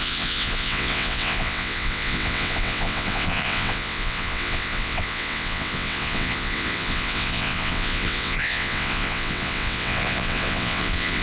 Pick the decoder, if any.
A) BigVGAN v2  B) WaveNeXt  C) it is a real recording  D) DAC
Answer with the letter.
B